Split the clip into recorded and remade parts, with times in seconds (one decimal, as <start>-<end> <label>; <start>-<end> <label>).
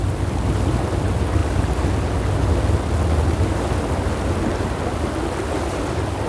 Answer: 0.0-6.3 recorded